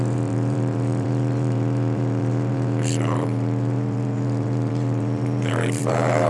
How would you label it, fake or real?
fake